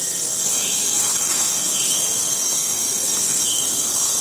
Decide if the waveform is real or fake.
fake